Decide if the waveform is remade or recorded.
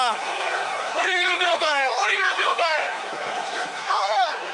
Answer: remade